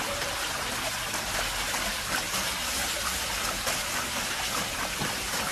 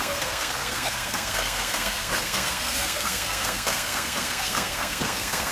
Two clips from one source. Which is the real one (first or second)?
first